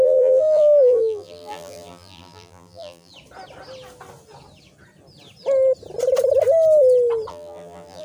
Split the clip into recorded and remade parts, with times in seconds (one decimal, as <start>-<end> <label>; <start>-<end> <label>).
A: 0.0-3.1 remade; 3.1-7.3 recorded; 7.3-8.0 remade